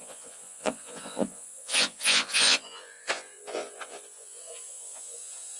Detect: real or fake fake